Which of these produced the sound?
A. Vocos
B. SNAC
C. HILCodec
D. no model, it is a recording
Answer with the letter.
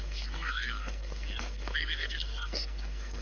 B